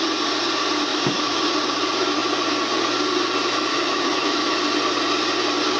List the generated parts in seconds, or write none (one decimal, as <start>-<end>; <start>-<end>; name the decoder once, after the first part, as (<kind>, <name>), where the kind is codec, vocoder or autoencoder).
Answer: 0.9-1.4 (autoencoder, DAC-VAE); 3.7-4.6